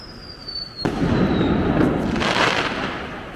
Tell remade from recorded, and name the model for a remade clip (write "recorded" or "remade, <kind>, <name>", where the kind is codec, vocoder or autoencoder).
remade, vocoder, BigVGAN v2